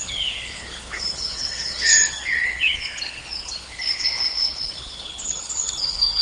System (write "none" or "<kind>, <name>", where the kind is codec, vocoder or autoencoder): codec, HILCodec